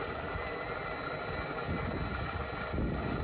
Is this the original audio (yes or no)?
yes